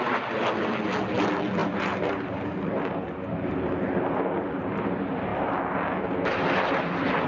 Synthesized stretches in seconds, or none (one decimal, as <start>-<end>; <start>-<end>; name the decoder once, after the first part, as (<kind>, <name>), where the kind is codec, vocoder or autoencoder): 1.6-2.8 (vocoder, BigVGAN v2)